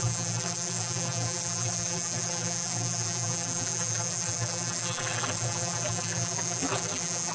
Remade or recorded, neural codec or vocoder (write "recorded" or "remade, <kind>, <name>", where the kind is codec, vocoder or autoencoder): remade, vocoder, BigVGAN v2